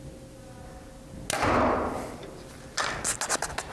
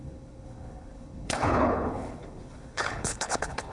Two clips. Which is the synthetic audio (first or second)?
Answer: second